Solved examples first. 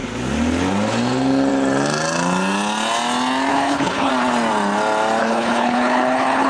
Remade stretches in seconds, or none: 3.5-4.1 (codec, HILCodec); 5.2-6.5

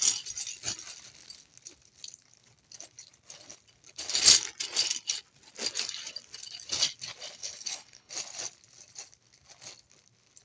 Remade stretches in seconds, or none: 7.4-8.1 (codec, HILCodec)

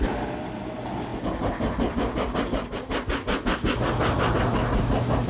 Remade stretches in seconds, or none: none